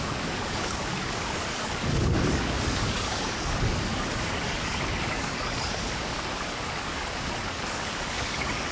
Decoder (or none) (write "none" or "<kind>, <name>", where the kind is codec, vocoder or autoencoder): codec, DAC